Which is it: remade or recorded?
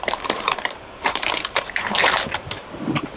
remade